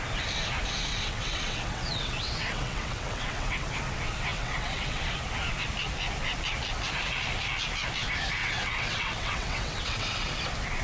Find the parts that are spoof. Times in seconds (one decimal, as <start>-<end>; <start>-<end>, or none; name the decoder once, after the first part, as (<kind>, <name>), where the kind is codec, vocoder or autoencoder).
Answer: 0.9-3.7 (vocoder, WaveNeXt); 4.3-5.0; 8.4-10.3